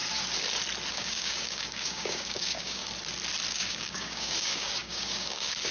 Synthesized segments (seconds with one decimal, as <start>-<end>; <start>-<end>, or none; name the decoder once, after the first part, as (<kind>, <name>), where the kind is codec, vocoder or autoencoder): 0.9-2.8 (codec, DAC); 3.5-5.7